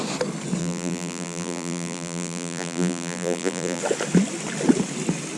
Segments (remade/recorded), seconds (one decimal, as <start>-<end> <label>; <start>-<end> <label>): 0.0-0.6 recorded; 0.6-3.8 remade; 3.8-5.4 recorded